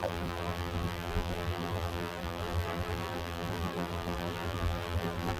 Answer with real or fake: fake